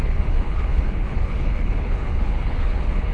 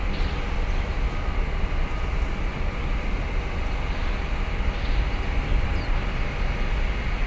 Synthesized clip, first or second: first